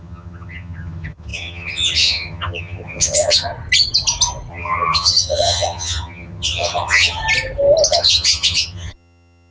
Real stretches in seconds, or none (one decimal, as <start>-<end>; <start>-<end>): 3.5-4.5; 7.2-7.9